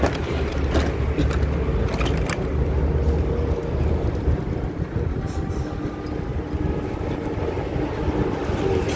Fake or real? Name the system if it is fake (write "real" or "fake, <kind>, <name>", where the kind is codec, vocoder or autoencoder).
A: real